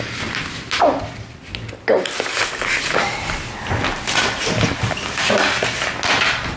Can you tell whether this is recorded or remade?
recorded